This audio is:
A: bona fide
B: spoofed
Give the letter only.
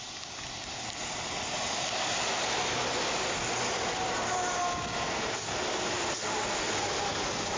A